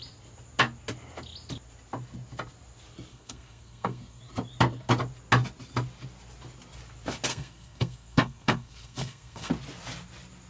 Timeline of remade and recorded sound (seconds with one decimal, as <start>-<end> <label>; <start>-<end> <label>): 0.0-3.1 recorded; 3.1-4.2 remade; 4.2-7.3 recorded; 7.3-9.5 remade; 9.5-10.5 recorded